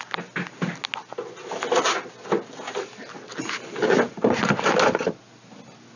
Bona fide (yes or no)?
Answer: yes